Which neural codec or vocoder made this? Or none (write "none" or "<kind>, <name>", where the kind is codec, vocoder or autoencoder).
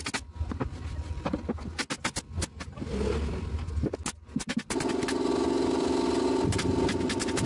none